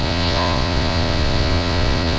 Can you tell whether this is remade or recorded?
remade